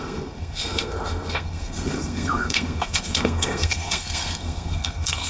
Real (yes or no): no